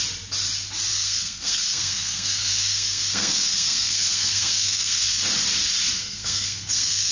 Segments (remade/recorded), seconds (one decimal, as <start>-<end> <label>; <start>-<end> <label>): 0.0-0.9 recorded; 0.9-5.2 remade; 5.2-6.0 recorded; 6.0-7.1 remade